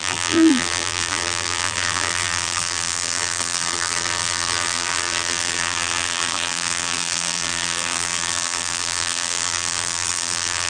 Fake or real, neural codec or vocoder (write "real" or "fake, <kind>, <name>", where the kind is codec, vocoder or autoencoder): fake, vocoder, BigVGAN v2